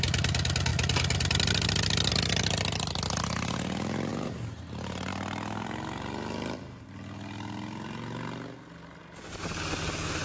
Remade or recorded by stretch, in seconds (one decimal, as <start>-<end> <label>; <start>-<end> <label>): 0.0-4.1 recorded; 4.1-5.1 remade; 5.1-10.2 recorded